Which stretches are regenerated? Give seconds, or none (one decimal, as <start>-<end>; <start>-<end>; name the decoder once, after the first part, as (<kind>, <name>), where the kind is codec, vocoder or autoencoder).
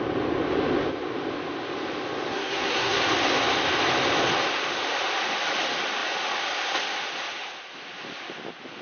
2.3-3.0 (codec, SNAC)